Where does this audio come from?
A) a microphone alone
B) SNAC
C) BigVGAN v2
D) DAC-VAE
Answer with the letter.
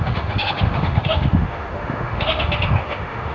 D